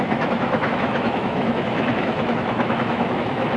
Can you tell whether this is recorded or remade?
remade